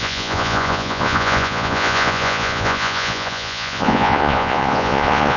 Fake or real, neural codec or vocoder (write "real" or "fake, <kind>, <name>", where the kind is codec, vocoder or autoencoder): fake, vocoder, Vocos